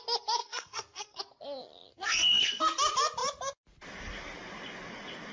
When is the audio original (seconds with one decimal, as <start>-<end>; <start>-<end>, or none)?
0.0-0.4; 1.2-1.9; 2.6-5.3